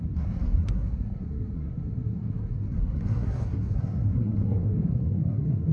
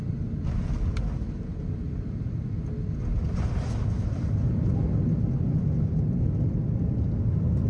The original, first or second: second